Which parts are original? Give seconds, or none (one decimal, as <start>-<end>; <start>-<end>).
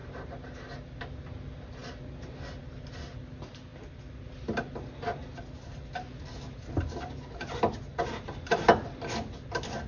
0.0-9.9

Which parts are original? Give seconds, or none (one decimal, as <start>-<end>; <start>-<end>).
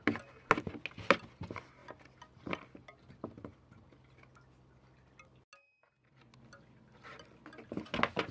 0.0-8.3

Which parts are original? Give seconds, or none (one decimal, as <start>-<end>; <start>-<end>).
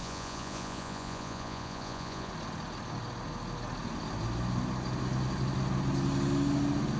2.3-7.0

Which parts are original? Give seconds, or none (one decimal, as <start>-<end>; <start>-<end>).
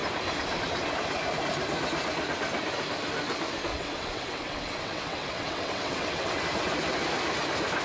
0.0-3.7; 6.4-7.8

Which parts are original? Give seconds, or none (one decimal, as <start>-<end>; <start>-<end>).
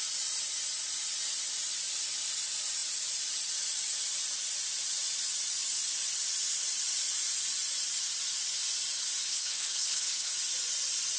0.0-9.3; 10.3-11.2